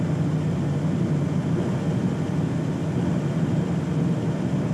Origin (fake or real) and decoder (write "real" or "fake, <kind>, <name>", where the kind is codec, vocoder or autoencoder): real